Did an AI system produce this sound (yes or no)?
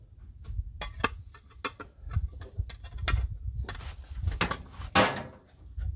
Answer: no